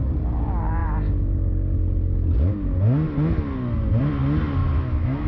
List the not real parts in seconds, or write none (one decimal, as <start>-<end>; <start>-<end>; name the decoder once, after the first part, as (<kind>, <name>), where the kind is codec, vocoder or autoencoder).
4.6-5.3 (autoencoder, DAC-VAE)

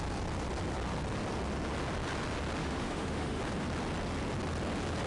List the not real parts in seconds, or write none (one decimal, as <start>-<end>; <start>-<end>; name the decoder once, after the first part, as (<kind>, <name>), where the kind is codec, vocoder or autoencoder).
2.6-3.4 (autoencoder, DAC-VAE)

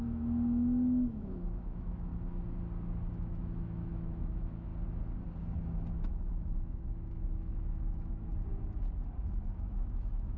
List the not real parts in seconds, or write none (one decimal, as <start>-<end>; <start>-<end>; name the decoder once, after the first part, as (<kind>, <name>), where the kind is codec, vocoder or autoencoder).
0.0-2.1 (autoencoder, DAC-VAE); 3.1-4.7; 5.9-8.3; 9.2-10.4

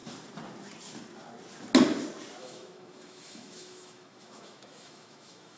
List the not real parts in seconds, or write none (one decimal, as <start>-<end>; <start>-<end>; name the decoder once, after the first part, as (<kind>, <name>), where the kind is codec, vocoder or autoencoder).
2.4-5.6 (autoencoder, DAC-VAE)

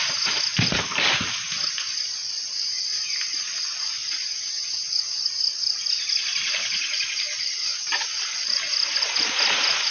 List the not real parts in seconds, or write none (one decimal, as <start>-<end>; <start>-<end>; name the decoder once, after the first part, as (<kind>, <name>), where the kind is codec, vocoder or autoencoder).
none

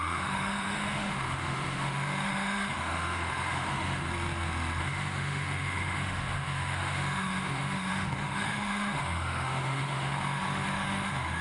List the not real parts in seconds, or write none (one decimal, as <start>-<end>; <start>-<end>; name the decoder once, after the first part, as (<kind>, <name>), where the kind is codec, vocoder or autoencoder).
0.0-4.1 (autoencoder, DAC-VAE); 4.8-11.4

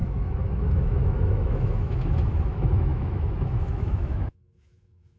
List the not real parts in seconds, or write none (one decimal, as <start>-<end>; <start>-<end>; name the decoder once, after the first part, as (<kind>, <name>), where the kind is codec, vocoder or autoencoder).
0.0-5.2 (autoencoder, DAC-VAE)

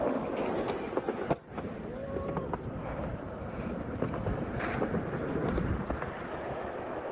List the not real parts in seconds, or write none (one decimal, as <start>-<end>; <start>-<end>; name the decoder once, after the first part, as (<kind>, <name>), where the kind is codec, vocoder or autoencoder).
6.2-7.1 (autoencoder, DAC-VAE)